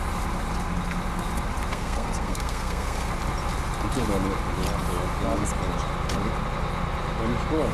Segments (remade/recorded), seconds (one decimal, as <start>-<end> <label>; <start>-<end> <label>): 0.0-1.7 recorded; 1.7-3.1 remade; 3.1-7.7 recorded